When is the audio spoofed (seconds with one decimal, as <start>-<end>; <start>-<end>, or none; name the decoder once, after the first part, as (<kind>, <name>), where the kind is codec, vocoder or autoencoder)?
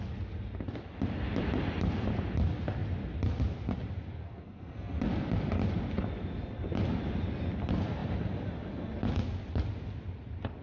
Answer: 4.2-5.0 (codec, SNAC)